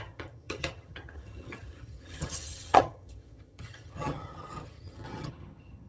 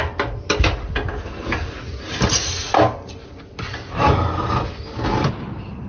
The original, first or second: second